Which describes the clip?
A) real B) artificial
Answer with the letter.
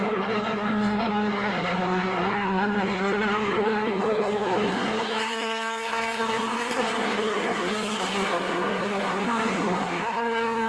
B